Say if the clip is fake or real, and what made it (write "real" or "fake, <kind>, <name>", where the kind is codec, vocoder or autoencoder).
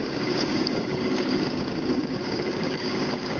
fake, codec, DAC